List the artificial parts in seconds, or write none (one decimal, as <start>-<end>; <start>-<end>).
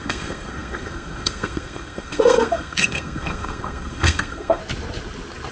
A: 0.0-4.6